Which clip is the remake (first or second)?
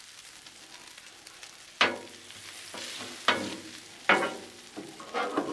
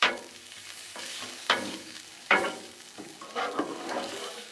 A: second